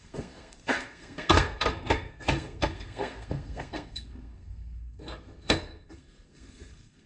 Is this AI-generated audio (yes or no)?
yes